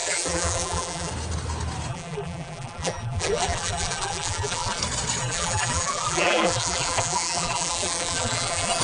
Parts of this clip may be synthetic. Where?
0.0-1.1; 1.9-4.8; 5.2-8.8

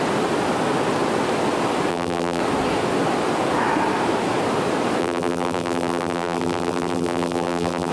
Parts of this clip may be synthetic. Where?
1.9-2.4; 5.0-7.9

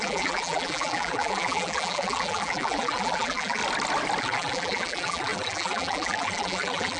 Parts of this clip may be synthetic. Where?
0.0-3.6; 4.2-7.0

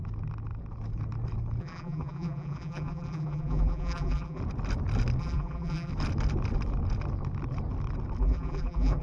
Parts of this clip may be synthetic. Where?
1.6-4.4; 5.2-5.9; 8.2-9.0

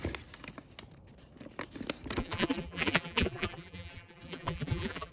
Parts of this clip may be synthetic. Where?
2.2-5.1

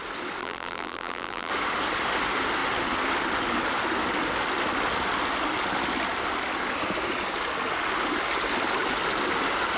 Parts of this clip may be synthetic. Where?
0.4-1.5